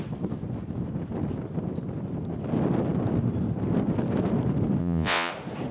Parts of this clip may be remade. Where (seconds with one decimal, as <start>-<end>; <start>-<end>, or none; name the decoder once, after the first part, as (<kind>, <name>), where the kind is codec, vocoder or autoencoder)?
4.8-5.3 (vocoder, Vocos)